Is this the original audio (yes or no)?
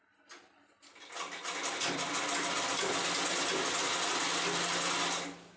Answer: yes